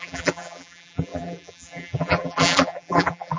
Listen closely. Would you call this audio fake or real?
fake